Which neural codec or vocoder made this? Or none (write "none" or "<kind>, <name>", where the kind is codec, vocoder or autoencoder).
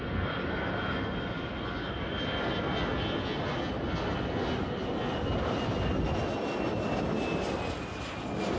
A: none